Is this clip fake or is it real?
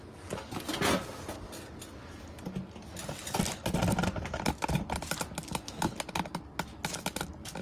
real